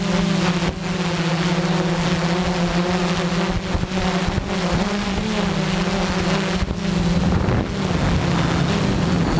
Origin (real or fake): real